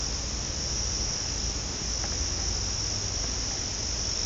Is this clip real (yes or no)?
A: yes